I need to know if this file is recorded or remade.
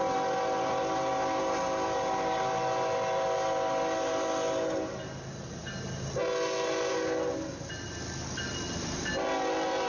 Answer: recorded